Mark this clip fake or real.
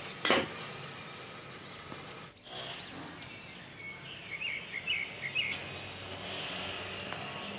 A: real